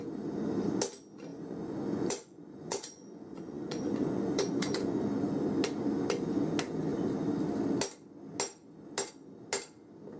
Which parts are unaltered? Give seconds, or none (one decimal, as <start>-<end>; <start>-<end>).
0.0-1.3; 5.3-10.2